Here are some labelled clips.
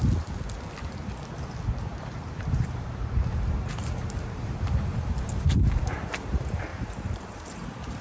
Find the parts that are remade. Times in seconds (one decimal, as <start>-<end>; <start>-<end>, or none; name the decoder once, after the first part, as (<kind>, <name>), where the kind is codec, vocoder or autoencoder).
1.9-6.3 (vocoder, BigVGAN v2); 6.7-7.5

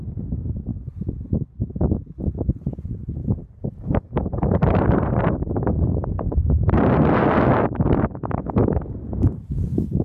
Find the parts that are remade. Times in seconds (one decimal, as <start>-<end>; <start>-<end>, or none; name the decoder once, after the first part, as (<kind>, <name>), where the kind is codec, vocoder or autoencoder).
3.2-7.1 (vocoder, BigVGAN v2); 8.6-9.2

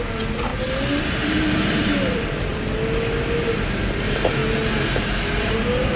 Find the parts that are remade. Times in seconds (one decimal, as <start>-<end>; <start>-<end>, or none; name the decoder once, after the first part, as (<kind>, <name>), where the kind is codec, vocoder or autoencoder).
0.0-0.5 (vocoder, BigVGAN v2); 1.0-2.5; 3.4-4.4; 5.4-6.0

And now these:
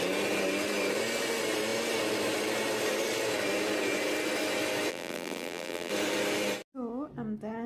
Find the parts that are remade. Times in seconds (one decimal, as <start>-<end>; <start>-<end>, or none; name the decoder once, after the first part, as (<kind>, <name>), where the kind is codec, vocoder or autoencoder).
4.9-5.9 (vocoder, BigVGAN v2)

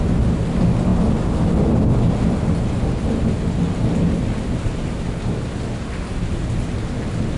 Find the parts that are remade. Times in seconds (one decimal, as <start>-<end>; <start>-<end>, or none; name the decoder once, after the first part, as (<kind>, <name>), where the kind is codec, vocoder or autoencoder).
none